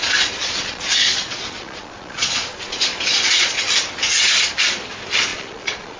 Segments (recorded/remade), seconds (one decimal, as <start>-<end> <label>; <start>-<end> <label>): 0.0-3.6 remade; 3.6-5.3 recorded; 5.3-6.0 remade